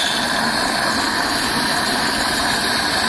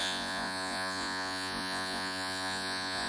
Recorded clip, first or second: first